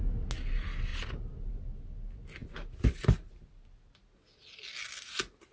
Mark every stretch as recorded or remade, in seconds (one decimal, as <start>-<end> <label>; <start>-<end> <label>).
0.0-5.5 recorded